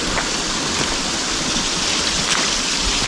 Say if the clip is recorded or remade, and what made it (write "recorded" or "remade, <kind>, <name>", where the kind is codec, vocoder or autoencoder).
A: recorded